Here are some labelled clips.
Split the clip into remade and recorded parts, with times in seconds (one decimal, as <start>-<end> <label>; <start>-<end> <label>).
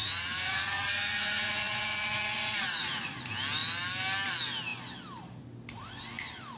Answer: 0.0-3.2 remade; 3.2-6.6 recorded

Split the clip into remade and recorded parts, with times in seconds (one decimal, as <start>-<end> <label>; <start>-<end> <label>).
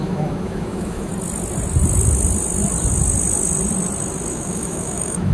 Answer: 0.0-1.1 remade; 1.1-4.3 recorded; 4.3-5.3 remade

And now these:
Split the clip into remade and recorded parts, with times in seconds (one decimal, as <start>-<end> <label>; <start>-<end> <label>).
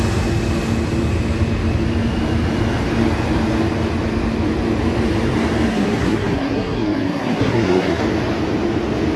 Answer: 0.0-5.7 recorded; 5.7-8.0 remade; 8.0-9.2 recorded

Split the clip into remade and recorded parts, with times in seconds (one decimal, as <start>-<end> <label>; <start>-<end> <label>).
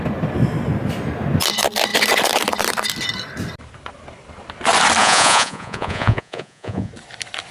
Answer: 0.0-5.0 recorded; 5.0-6.9 remade; 6.9-7.5 recorded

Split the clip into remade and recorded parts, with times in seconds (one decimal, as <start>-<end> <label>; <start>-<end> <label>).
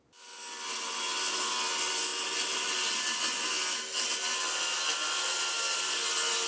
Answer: 0.0-6.5 recorded